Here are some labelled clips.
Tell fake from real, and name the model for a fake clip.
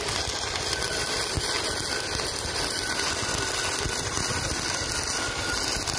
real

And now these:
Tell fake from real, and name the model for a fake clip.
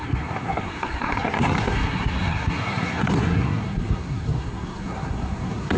fake, codec, SNAC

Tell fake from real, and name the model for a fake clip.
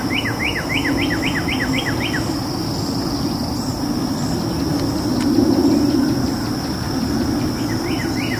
real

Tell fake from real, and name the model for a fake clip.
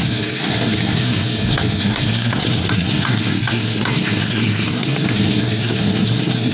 fake, codec, SNAC